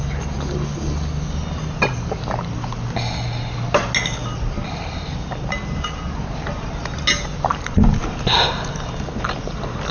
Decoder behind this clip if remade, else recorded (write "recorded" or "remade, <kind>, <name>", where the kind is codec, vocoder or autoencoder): recorded